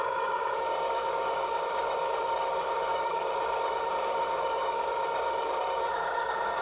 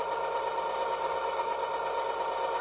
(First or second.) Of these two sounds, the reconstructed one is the first